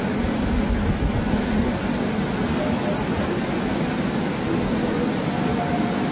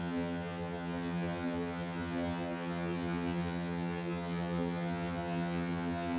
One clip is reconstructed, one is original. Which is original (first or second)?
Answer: first